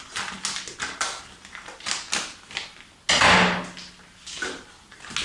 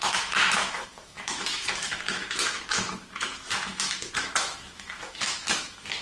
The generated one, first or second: second